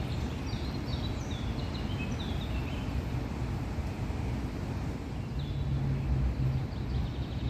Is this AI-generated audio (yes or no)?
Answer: no